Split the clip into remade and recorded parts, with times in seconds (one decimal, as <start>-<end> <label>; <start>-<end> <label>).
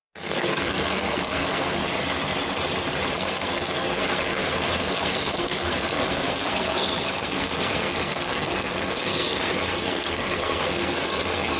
0.0-1.8 remade; 1.8-3.1 recorded; 3.1-11.6 remade